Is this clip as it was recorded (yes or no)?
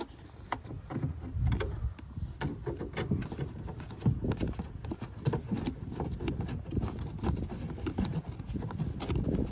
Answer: yes